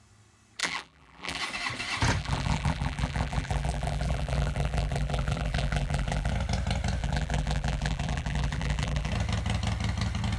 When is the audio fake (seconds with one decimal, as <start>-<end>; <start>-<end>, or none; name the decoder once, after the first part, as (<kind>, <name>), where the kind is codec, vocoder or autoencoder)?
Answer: 0.6-1.4 (vocoder, BigVGAN v2); 2.2-6.3; 7.0-9.1